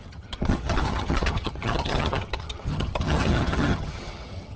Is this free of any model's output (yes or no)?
no